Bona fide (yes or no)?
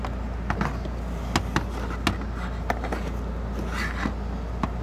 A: yes